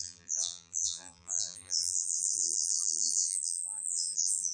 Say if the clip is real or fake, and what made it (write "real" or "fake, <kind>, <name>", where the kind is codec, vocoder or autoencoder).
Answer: fake, vocoder, BigVGAN v2